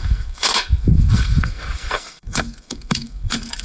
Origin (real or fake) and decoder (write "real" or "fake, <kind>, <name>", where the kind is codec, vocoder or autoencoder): fake, codec, SNAC